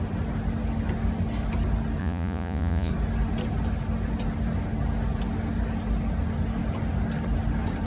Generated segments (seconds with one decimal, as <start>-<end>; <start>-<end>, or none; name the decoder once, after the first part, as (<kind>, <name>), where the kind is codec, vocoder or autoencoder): 2.0-2.9 (vocoder, Vocos)